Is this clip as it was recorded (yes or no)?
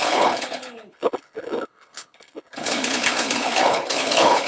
no